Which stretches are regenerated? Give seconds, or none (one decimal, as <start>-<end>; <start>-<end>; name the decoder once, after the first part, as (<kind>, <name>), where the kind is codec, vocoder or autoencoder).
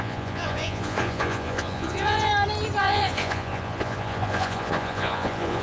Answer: 0.0-2.3 (vocoder, Vocos); 2.8-5.6